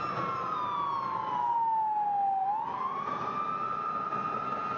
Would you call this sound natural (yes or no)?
yes